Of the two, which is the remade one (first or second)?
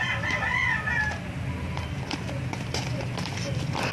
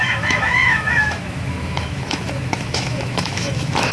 second